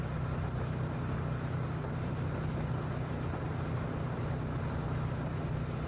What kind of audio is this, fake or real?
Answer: real